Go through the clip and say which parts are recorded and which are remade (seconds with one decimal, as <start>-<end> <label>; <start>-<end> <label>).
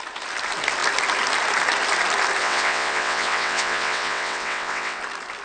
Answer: 0.0-2.4 recorded; 2.4-5.0 remade; 5.0-5.4 recorded